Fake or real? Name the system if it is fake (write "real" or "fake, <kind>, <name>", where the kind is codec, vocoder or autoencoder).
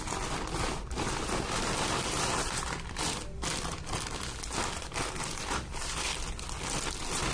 real